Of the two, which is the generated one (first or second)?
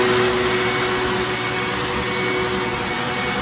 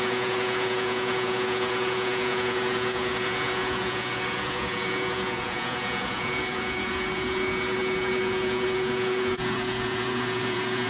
second